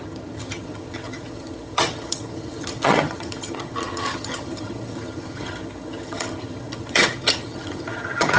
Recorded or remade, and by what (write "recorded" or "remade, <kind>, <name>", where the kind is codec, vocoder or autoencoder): remade, vocoder, HiFi-GAN